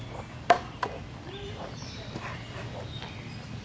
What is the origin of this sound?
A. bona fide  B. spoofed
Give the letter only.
A